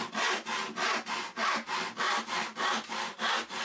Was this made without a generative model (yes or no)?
yes